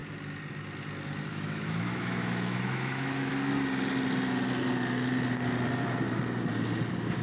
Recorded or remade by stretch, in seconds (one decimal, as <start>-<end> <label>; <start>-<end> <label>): 0.0-1.3 recorded; 1.3-3.3 remade; 3.3-7.2 recorded